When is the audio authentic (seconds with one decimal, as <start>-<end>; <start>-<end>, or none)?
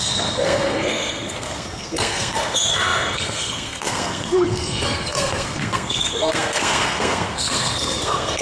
none